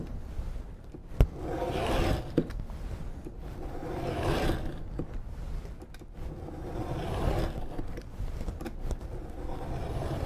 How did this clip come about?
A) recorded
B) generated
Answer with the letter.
A